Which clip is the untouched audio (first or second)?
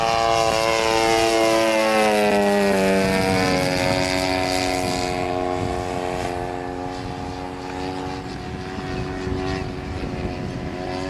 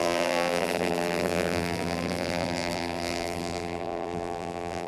first